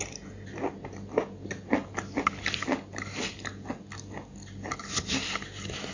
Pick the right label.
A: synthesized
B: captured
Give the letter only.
B